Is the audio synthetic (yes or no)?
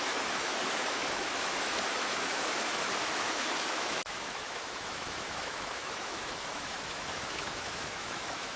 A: yes